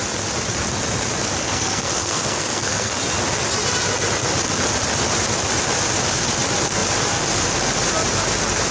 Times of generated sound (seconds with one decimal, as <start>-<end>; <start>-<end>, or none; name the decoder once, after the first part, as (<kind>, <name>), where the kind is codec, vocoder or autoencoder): 1.4-2.9 (codec, SNAC)